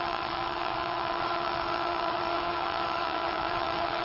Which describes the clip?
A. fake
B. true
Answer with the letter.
A